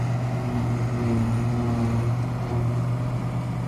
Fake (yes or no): no